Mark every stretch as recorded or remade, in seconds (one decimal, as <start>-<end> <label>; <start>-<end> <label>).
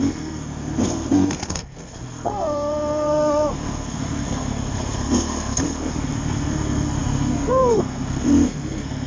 0.0-9.1 remade